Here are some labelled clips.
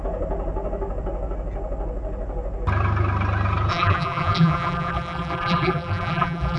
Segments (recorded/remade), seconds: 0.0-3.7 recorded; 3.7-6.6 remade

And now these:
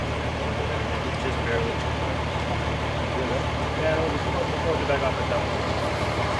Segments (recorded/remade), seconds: 0.0-3.8 remade; 3.8-4.2 recorded; 4.2-5.0 remade; 5.0-6.4 recorded

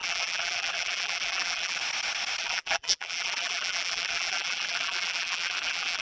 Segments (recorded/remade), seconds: 0.0-1.8 remade; 1.8-2.4 recorded; 2.4-6.0 remade

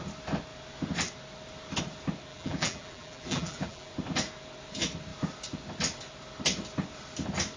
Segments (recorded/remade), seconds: 0.0-2.3 recorded; 2.3-3.9 remade; 3.9-7.6 recorded